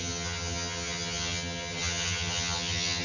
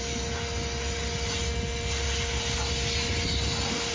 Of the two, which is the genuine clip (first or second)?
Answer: second